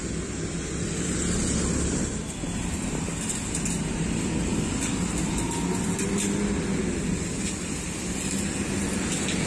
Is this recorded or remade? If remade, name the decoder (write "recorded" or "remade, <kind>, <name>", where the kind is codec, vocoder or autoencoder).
recorded